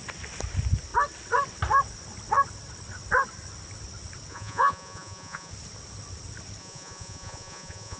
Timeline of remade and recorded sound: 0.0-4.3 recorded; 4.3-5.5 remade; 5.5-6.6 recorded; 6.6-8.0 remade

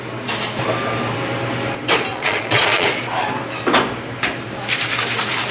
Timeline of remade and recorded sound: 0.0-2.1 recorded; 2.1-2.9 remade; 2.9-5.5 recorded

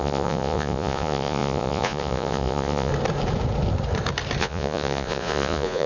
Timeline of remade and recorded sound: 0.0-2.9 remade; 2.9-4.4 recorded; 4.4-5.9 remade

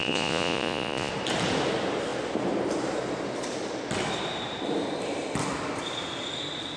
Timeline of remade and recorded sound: 0.0-1.1 remade; 1.1-6.8 recorded

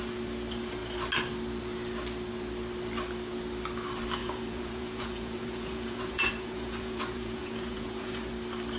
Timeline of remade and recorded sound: 0.0-4.2 recorded; 4.2-8.3 remade; 8.3-8.8 recorded